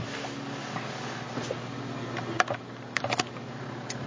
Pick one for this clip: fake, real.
real